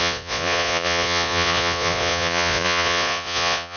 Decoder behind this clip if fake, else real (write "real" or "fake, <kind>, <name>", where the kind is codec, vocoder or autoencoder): fake, vocoder, Vocos